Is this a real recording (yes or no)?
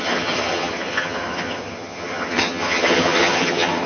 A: no